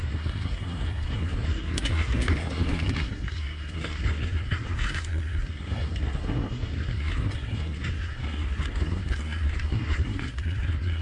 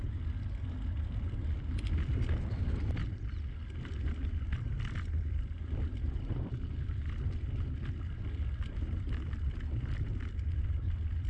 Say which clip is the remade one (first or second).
first